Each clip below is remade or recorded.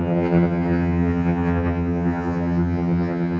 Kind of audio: remade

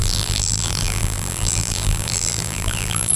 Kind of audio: remade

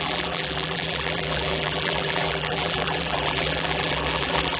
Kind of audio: remade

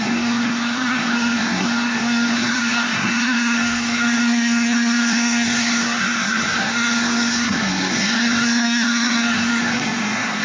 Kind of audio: remade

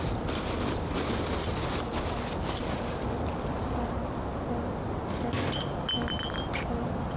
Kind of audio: recorded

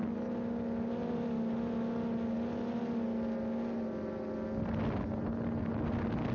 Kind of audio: recorded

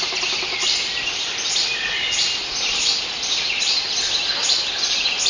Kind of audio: recorded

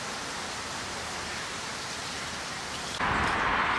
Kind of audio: recorded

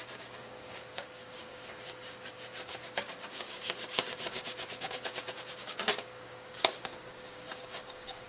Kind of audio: remade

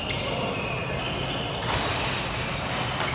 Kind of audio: recorded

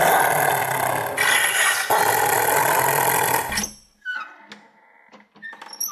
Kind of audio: recorded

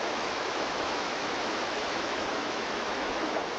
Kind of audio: remade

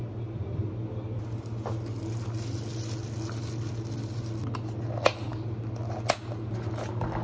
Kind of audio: recorded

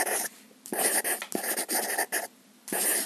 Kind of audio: recorded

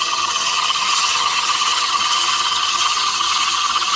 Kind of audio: remade